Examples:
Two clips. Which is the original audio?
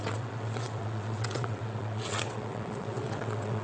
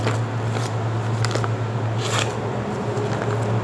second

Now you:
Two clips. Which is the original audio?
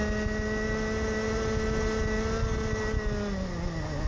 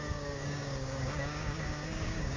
first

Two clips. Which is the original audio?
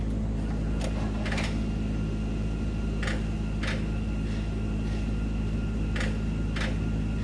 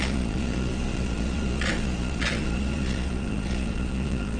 first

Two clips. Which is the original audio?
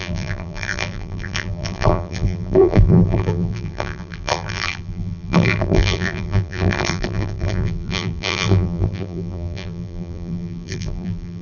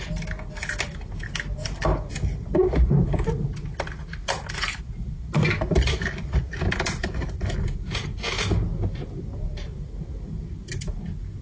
second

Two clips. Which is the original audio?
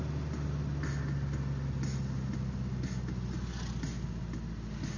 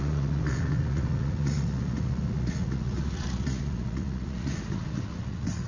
first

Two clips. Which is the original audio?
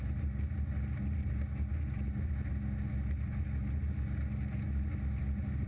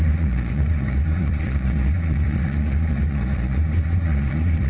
first